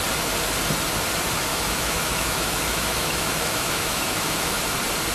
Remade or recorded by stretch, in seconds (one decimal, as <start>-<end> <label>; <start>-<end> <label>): 0.0-1.5 recorded; 1.5-4.6 remade; 4.6-5.1 recorded